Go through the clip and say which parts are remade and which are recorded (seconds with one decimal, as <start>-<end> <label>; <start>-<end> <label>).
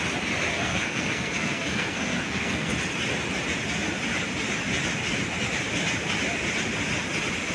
0.0-0.5 recorded; 0.5-2.7 remade; 2.7-7.5 recorded